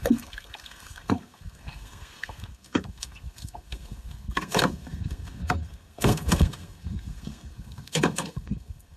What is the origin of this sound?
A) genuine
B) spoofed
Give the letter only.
B